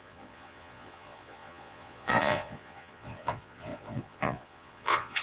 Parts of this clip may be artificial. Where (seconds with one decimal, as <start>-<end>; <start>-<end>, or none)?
0.0-5.2